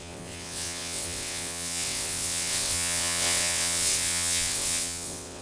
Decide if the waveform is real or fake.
fake